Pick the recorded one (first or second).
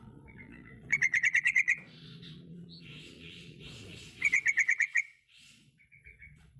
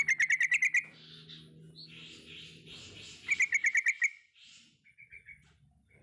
second